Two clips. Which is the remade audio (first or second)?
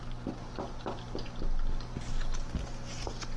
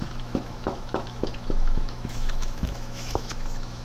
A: second